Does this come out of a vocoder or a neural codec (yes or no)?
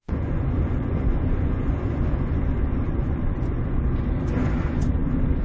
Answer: yes